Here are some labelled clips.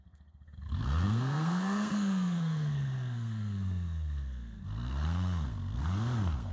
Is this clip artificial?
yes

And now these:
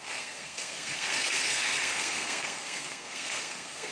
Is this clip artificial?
yes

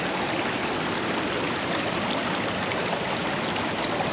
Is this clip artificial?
no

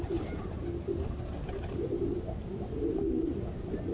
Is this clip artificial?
no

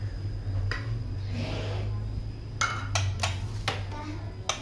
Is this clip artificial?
no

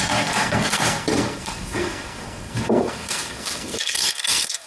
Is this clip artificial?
yes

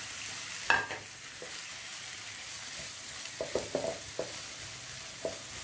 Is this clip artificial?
no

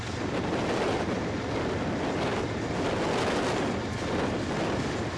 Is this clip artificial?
no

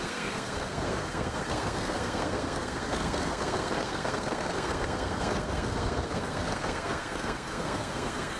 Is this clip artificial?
yes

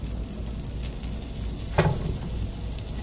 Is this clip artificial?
no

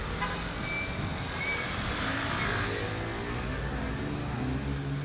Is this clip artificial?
no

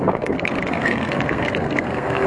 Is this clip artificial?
yes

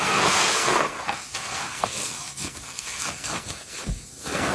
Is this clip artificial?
yes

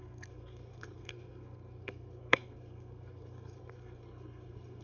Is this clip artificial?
yes